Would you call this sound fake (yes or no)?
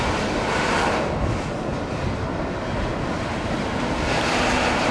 no